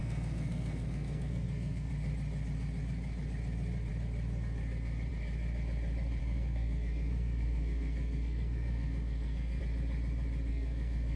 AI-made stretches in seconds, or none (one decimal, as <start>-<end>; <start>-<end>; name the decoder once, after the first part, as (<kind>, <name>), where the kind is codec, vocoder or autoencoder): 0.0-1.9 (codec, SNAC); 6.2-9.6; 10.5-11.2